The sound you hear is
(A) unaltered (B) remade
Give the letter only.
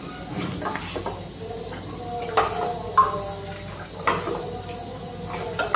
A